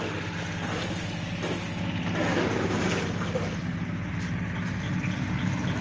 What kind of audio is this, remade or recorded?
recorded